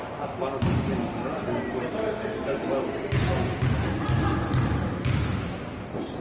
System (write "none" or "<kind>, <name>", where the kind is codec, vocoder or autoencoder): none